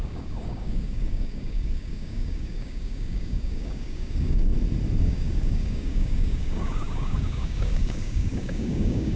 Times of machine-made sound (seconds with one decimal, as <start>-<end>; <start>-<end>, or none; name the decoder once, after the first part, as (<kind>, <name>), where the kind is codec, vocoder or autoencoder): 0.0-4.5 (codec, DAC); 5.0-9.2